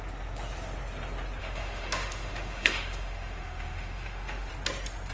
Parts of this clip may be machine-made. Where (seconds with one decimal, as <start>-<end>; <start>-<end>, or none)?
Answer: 1.4-4.5